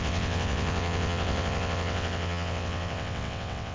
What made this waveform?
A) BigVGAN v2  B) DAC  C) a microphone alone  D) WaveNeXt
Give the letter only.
D